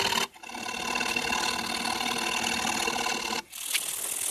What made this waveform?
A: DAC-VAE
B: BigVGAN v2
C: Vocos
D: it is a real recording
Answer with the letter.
D